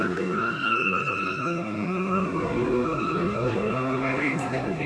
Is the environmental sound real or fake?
fake